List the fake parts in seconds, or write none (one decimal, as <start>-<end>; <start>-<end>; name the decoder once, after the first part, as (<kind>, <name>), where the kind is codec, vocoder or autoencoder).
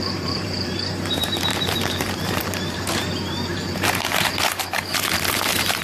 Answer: 0.0-5.8 (vocoder, BigVGAN v2)